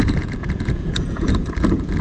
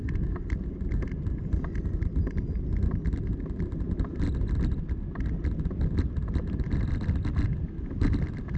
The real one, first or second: second